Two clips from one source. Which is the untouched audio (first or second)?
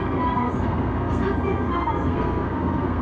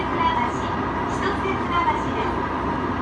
second